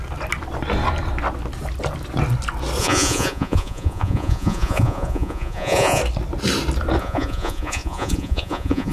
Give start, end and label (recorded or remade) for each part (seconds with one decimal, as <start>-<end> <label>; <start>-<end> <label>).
0.0-2.8 recorded; 2.8-6.0 remade; 6.0-7.0 recorded; 7.0-8.9 remade